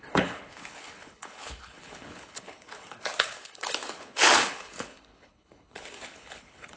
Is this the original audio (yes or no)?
no